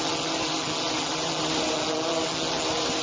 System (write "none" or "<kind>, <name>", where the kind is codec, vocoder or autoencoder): none